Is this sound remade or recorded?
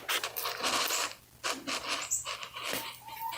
recorded